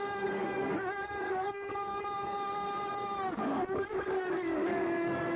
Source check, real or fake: fake